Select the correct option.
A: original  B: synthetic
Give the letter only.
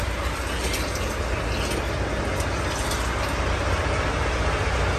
A